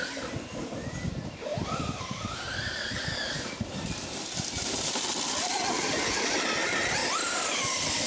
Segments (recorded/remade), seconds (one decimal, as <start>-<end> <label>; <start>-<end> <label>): 0.0-1.5 recorded; 1.5-2.4 remade; 2.4-7.0 recorded; 7.0-7.6 remade; 7.6-8.1 recorded